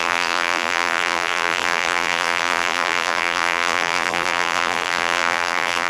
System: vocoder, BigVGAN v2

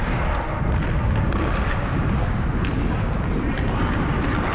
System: none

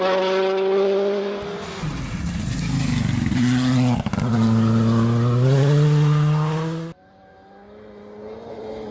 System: none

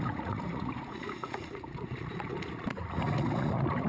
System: vocoder, Vocos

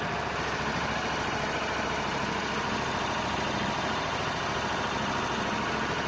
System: none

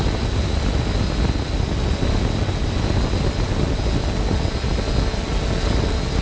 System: none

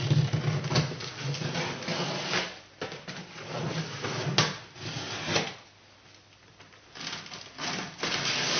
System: none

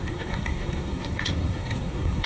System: codec, SNAC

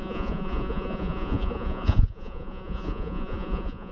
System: vocoder, Vocos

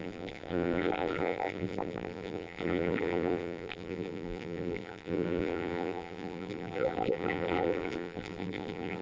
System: vocoder, BigVGAN v2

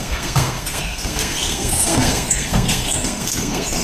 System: codec, SNAC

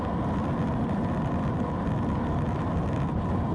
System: none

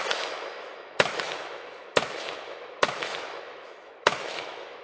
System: autoencoder, DAC-VAE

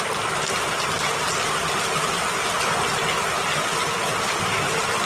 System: vocoder, BigVGAN v2